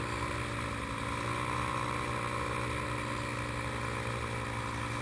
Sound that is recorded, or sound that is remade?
recorded